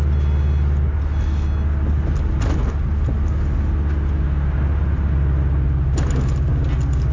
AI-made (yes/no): no